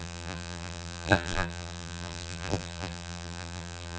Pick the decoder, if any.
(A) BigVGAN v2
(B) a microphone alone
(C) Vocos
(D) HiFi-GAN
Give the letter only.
A